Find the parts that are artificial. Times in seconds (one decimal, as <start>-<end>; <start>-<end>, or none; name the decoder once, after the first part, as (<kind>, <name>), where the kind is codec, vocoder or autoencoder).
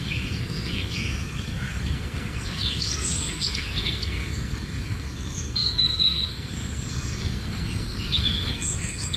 0.0-9.2 (codec, SNAC)